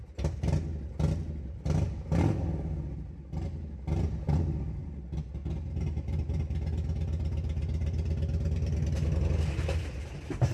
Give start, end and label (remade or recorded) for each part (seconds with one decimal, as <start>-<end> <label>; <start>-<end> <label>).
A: 0.0-10.5 recorded